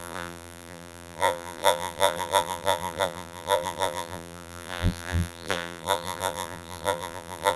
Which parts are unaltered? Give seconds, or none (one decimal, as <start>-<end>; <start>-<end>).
none

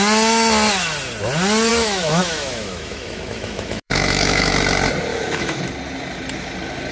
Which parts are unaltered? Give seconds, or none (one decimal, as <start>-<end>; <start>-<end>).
0.0-1.7; 4.5-5.1; 5.6-6.9

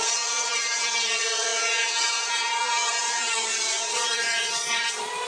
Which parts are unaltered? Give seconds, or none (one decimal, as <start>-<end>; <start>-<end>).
none

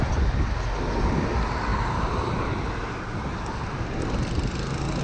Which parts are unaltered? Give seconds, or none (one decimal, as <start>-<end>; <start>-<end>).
0.0-5.0

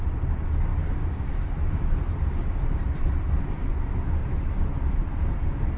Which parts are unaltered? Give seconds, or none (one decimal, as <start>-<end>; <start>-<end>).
0.0-4.2; 5.1-5.8

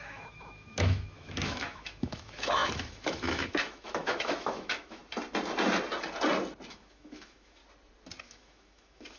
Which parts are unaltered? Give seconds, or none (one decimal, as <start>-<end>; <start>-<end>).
5.0-6.7; 7.6-8.2

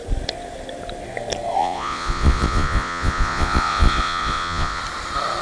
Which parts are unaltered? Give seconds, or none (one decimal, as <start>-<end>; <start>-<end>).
0.0-1.6; 4.8-5.4